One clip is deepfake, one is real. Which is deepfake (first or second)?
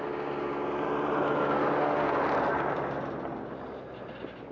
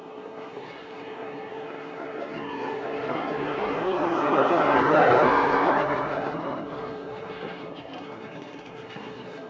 second